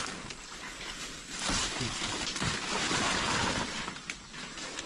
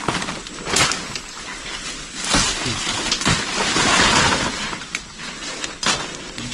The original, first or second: second